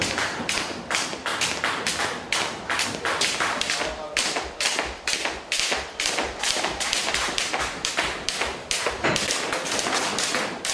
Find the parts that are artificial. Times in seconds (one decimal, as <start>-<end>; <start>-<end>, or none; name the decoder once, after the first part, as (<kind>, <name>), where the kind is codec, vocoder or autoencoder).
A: none